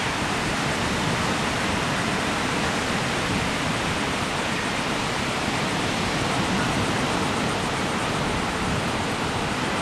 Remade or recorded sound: remade